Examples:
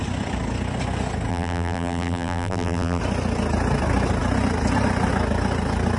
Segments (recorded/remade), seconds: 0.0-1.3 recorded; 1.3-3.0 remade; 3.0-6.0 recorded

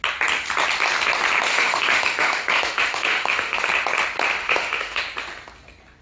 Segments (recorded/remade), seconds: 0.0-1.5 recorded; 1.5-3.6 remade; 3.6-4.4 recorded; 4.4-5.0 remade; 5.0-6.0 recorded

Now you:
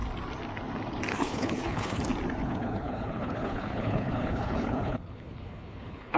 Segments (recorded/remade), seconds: 0.0-1.1 recorded; 1.1-2.0 remade; 2.0-2.4 recorded; 2.4-6.2 remade

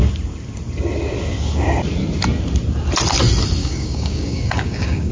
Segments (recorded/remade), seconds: 0.0-3.6 recorded; 3.6-5.1 remade